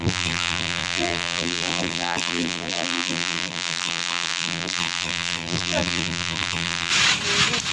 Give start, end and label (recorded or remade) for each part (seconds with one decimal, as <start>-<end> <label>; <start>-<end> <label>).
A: 0.0-6.9 remade; 6.9-7.7 recorded